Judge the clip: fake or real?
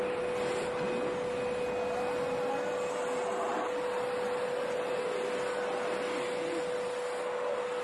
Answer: real